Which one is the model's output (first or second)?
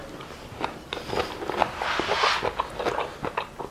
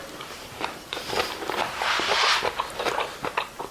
second